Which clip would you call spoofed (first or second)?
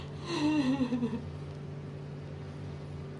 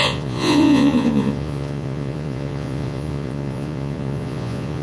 second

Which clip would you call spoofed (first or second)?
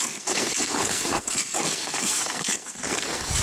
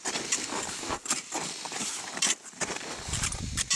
first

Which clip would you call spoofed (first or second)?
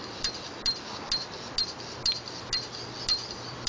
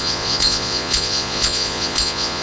second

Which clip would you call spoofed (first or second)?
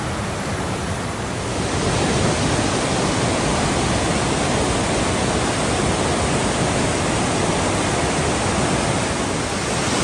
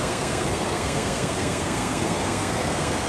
second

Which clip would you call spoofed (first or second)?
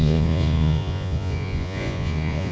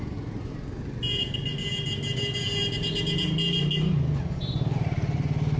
first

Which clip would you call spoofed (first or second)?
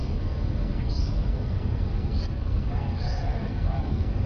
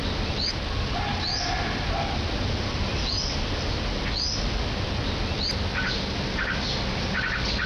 first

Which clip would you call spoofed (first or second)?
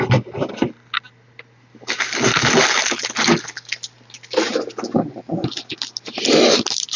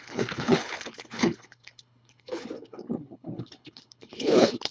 second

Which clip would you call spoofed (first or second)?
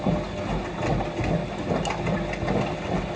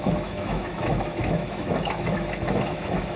second